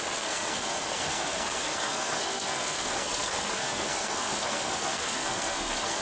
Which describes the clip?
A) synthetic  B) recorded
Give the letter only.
A